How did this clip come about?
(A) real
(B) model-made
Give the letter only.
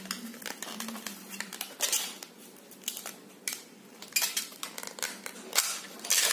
A